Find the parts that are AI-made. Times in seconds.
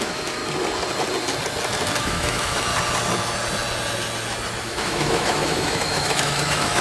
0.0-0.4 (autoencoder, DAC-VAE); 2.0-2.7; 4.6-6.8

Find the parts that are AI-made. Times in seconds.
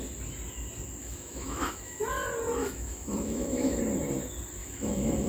1.0-2.0 (autoencoder, DAC-VAE); 2.6-3.8; 4.6-5.3